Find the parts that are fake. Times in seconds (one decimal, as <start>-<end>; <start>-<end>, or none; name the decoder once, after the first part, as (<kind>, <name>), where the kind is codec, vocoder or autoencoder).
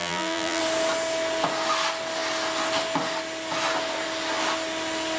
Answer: 0.0-0.6 (vocoder, BigVGAN v2)